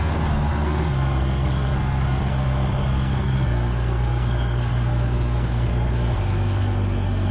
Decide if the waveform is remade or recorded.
remade